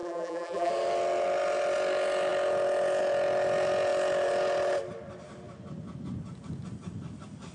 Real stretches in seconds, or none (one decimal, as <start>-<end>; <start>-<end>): 0.7-7.5